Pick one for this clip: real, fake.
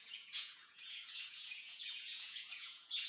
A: fake